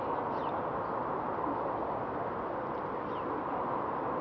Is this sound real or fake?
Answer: real